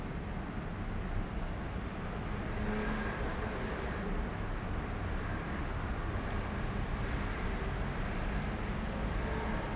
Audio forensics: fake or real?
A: real